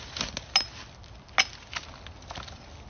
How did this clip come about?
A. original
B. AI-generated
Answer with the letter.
A